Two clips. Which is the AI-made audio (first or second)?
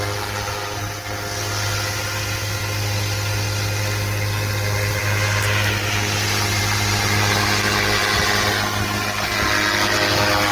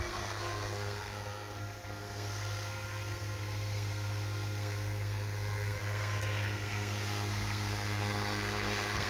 second